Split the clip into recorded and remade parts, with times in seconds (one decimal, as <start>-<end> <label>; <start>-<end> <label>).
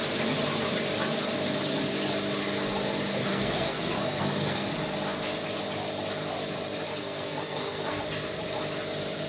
0.0-3.3 recorded; 3.3-4.7 remade; 4.7-6.9 recorded; 6.9-8.0 remade; 8.0-9.3 recorded